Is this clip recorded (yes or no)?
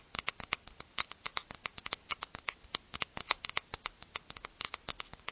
yes